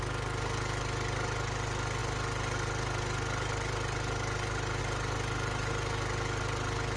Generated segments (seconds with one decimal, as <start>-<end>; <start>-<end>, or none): none